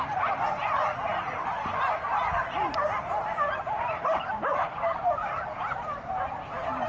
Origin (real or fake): real